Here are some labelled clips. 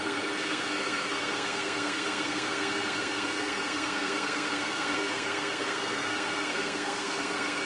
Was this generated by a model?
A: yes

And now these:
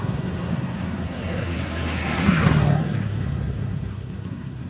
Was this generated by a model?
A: yes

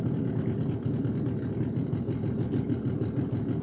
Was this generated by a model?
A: no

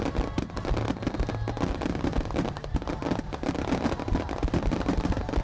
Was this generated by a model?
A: no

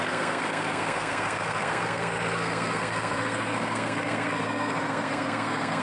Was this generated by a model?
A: yes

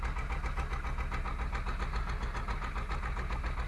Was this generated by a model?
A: no